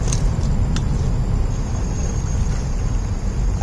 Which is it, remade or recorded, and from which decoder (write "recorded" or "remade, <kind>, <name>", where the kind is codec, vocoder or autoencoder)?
recorded